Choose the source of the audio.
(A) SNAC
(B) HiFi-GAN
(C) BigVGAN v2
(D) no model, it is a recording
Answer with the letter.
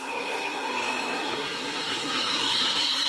A